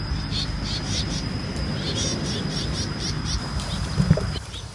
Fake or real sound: fake